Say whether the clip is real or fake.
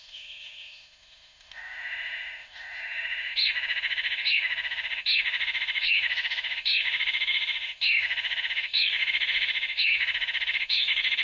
fake